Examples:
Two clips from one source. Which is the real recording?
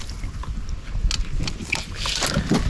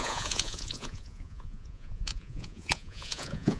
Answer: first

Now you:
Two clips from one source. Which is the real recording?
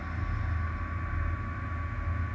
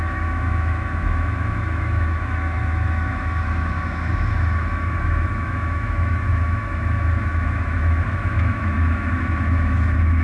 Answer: first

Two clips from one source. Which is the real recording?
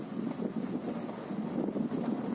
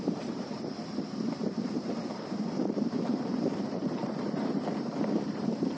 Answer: first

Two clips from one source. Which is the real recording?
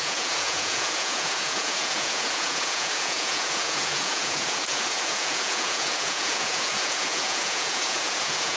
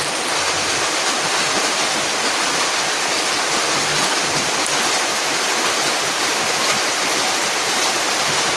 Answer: second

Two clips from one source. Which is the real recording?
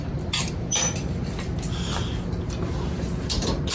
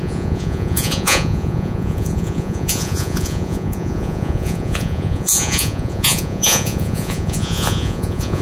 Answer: first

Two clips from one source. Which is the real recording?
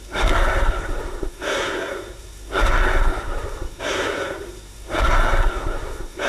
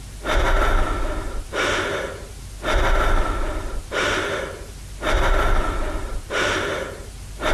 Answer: second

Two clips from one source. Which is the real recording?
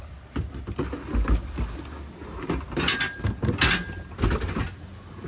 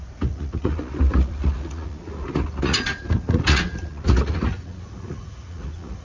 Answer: first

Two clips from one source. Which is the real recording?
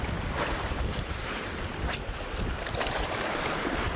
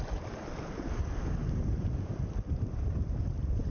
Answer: second